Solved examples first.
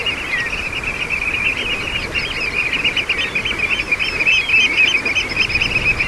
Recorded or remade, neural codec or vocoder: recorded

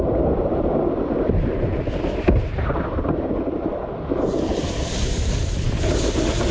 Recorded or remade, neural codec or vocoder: recorded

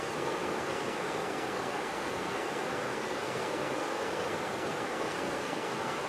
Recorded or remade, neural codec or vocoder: remade, codec, SNAC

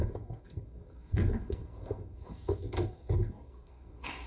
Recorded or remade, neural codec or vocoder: remade, codec, SNAC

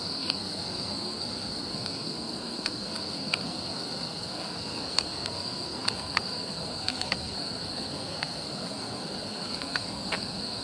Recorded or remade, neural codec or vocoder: remade, codec, SNAC